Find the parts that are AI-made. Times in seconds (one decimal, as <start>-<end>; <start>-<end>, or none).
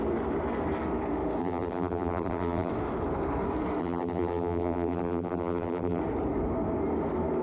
1.4-2.7; 3.8-6.0